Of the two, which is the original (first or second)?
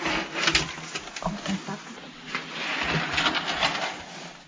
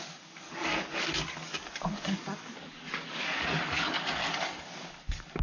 first